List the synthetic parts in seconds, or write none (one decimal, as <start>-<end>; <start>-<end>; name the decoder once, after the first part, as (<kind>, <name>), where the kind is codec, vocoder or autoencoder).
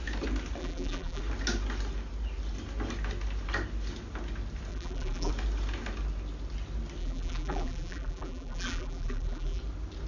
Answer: 0.6-1.2 (vocoder, BigVGAN v2); 4.7-5.3; 7.0-9.6